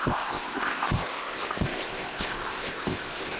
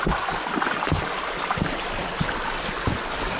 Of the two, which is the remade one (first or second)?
first